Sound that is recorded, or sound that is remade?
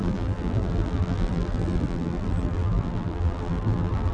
remade